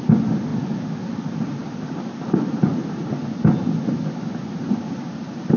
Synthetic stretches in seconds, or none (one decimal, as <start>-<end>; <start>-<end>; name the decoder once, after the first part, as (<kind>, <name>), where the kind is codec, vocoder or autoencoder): none